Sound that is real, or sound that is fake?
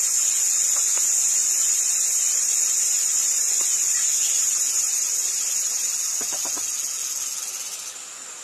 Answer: real